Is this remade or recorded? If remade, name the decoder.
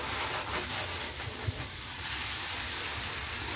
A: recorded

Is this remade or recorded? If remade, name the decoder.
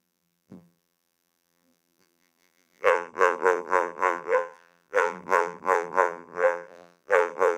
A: remade, vocoder, BigVGAN v2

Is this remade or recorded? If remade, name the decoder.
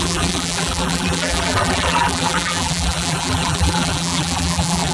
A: remade, vocoder, BigVGAN v2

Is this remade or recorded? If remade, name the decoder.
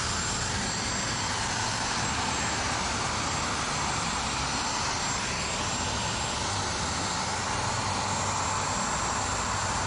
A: recorded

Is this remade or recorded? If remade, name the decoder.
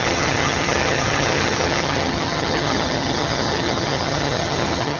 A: remade, vocoder, HiFi-GAN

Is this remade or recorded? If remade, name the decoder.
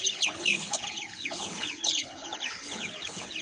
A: remade, codec, HILCodec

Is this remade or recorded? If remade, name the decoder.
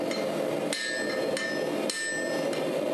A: recorded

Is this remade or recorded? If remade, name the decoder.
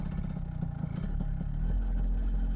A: recorded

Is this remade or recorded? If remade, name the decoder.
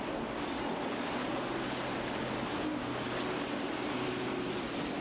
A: recorded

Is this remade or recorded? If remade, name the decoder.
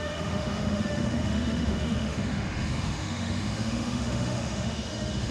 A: remade, autoencoder, DAC-VAE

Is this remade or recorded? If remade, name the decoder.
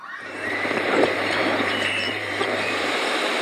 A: remade, vocoder, BigVGAN v2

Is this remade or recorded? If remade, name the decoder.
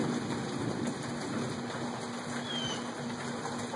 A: recorded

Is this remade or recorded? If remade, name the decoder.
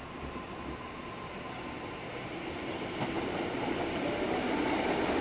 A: recorded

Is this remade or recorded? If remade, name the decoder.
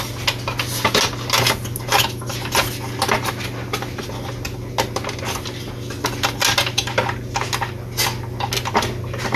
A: recorded